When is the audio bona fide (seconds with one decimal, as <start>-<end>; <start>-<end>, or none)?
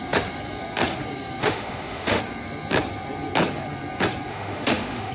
0.0-1.4; 2.2-4.3